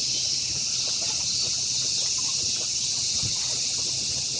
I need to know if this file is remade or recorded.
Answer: recorded